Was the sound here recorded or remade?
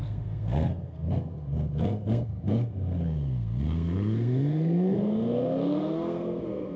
remade